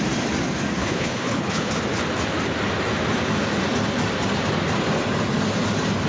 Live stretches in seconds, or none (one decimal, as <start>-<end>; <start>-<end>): 0.0-0.8; 1.7-6.1